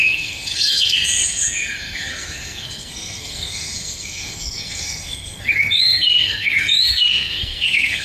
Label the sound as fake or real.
fake